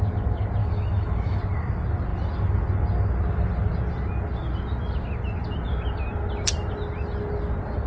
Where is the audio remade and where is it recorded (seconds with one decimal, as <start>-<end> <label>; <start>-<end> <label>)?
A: 0.0-0.6 recorded; 0.6-1.4 remade; 1.4-7.9 recorded

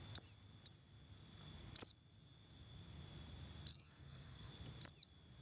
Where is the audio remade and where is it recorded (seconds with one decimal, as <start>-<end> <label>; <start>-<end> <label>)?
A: 0.0-3.7 recorded; 3.7-4.5 remade; 4.5-5.4 recorded

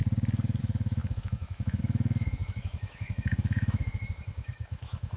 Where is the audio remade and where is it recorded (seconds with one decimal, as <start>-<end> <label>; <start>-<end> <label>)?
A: 0.0-0.6 recorded; 0.6-5.2 remade

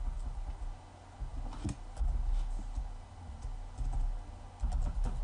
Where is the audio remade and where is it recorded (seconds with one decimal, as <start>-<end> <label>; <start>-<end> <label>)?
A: 0.0-5.2 recorded

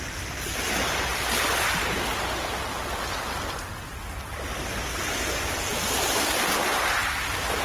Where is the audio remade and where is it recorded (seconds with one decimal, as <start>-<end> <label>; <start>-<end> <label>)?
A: 0.0-7.6 recorded

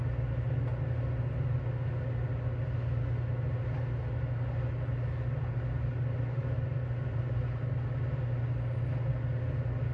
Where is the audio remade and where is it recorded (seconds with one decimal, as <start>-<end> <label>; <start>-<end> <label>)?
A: 0.0-6.4 recorded; 6.4-7.7 remade; 7.7-9.9 recorded